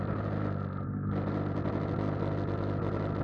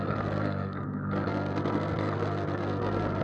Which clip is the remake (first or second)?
second